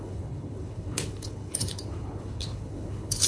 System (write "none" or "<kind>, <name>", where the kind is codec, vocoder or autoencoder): codec, HILCodec